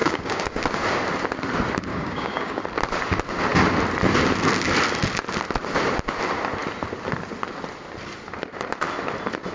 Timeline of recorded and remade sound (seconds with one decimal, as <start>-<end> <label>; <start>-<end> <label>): 0.0-0.6 remade; 0.6-1.9 recorded; 1.9-2.6 remade; 2.6-9.5 recorded